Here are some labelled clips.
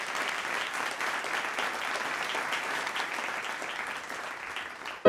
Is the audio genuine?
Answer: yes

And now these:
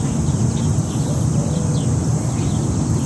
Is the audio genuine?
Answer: yes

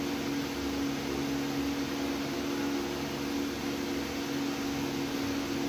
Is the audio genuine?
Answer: yes